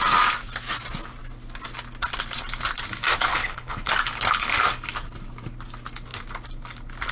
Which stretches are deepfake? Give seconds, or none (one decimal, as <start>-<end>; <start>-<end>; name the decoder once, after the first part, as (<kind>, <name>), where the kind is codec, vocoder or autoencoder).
3.3-3.9 (codec, HILCodec)